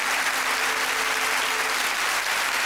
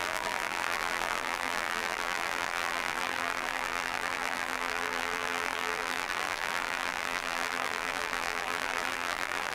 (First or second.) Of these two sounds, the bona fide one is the first